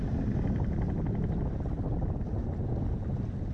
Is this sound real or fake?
real